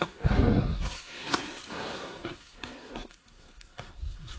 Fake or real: fake